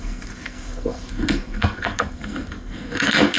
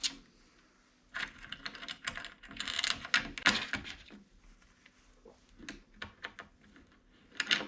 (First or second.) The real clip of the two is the second